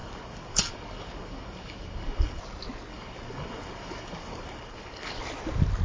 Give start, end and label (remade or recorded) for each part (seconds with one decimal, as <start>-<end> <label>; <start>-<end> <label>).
0.0-2.4 remade; 2.4-2.9 recorded; 2.9-5.2 remade; 5.2-5.8 recorded